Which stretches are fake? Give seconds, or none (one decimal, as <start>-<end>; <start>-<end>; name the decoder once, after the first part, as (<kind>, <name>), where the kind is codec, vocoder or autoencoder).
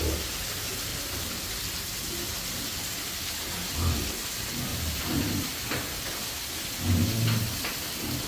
0.9-1.5 (vocoder, BigVGAN v2); 4.7-5.5